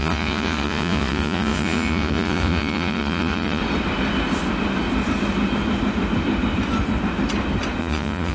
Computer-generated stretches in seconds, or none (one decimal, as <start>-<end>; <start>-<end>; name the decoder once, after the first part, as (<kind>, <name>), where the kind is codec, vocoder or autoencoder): 0.0-3.6 (vocoder, Vocos); 7.8-8.3